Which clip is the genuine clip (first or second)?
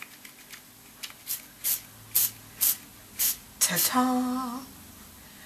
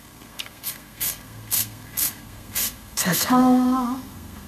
first